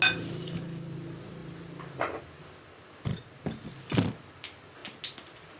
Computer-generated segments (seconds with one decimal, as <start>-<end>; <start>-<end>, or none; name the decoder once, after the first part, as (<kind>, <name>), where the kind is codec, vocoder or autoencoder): none